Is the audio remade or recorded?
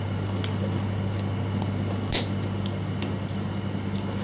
recorded